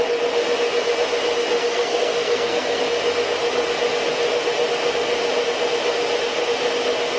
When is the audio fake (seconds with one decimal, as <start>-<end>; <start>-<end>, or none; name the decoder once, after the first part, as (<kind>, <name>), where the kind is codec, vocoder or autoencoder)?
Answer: 1.6-2.8 (codec, SNAC)